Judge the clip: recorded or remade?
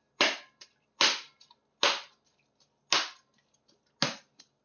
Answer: recorded